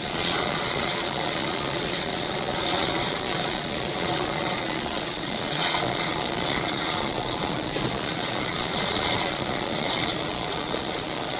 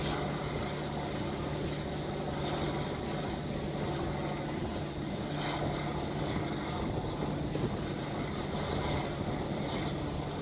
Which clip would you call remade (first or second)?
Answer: first